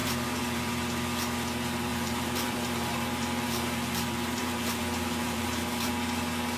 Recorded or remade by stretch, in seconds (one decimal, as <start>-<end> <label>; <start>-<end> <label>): 0.0-0.7 remade; 0.7-1.9 recorded; 1.9-4.8 remade; 4.8-5.2 recorded; 5.2-5.9 remade; 5.9-6.6 recorded